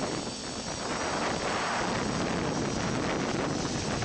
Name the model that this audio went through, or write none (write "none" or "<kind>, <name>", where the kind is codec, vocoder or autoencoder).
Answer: none